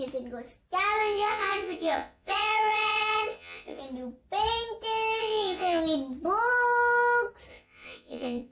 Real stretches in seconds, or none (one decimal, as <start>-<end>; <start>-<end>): 0.0-1.0; 3.8-5.2; 5.8-7.5